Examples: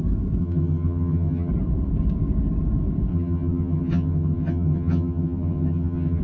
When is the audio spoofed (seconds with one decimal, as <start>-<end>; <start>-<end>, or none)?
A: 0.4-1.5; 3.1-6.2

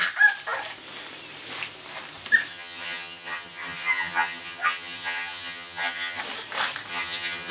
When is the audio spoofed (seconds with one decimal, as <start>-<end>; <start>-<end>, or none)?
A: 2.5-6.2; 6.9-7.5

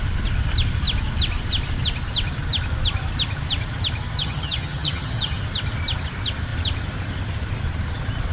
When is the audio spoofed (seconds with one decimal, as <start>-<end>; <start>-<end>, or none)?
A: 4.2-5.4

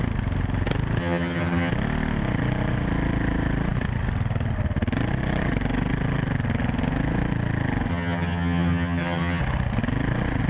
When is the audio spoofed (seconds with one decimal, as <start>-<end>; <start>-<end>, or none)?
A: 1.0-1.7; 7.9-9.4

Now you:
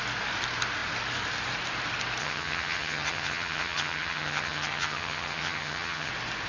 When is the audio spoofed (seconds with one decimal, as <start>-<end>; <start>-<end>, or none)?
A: 2.2-6.1

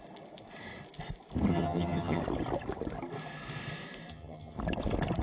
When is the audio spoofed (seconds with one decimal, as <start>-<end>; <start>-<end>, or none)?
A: 1.5-2.2; 4.1-4.6

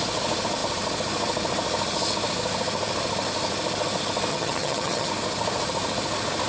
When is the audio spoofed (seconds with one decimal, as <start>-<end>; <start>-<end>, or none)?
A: 4.3-5.1

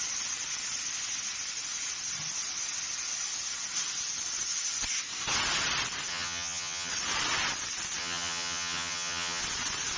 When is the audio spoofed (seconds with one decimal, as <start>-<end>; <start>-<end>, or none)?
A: 6.1-6.9; 8.0-9.4